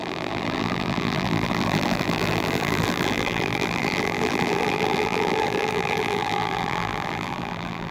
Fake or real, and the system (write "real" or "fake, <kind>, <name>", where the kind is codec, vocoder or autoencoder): fake, vocoder, BigVGAN v2